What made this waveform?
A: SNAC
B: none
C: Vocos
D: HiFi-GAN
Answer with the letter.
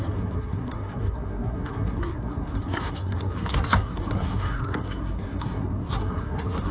A